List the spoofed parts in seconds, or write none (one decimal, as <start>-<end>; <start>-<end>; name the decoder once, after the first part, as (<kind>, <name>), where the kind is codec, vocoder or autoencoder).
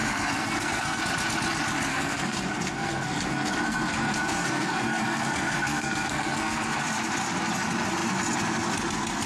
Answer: 0.0-1.0 (codec, SNAC); 1.9-6.8